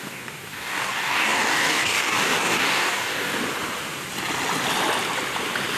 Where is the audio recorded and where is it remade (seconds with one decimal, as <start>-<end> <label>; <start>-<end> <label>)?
0.0-3.4 remade; 3.4-5.8 recorded